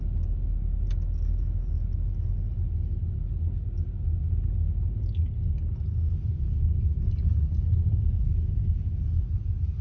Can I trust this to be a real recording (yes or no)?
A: yes